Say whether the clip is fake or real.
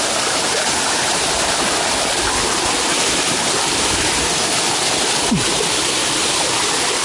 real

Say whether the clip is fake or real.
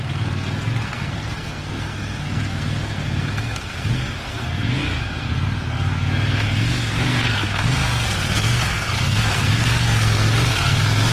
fake